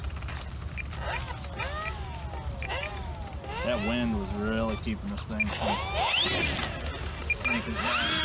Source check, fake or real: real